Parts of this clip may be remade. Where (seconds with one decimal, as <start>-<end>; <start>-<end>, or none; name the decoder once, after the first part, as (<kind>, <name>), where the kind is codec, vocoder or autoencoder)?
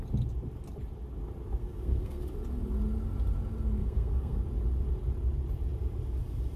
1.6-2.2 (codec, SNAC); 3.8-4.4